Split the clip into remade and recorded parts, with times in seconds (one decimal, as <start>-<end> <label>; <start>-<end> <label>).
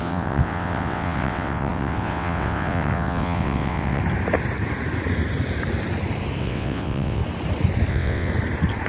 0.0-4.0 remade; 4.0-6.4 recorded; 6.4-7.2 remade; 7.2-7.9 recorded; 7.9-8.3 remade; 8.3-8.9 recorded